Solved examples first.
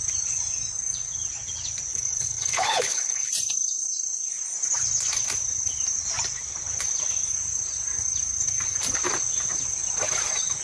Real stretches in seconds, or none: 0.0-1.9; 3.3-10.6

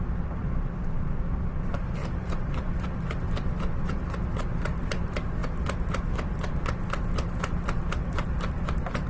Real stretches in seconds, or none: 0.0-2.0; 2.5-9.1

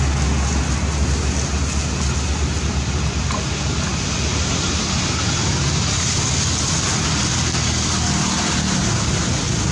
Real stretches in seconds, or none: 0.0-3.9; 4.5-9.7

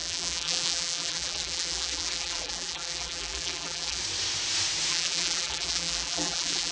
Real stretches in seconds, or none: 4.0-4.9